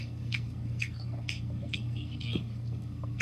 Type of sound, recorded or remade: remade